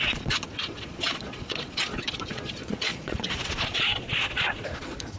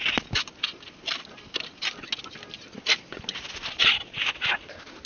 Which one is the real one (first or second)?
second